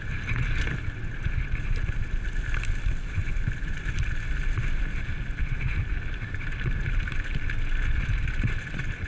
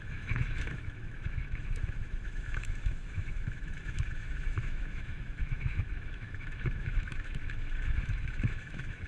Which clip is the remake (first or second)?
second